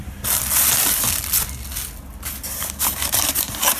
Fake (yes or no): no